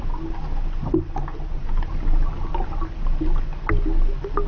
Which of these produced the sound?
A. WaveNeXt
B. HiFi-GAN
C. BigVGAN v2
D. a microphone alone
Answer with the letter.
D